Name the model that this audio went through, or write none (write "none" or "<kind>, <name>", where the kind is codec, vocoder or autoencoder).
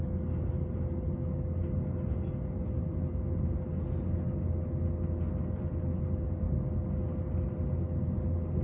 none